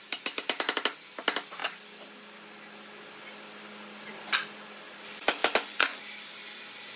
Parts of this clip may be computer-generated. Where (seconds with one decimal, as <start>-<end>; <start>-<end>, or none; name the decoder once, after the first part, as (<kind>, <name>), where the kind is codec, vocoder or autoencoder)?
5.4-6.0 (vocoder, Vocos)